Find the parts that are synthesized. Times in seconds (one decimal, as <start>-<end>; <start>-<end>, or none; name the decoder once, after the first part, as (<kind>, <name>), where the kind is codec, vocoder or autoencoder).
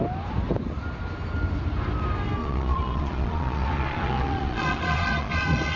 2.4-5.8 (vocoder, Vocos)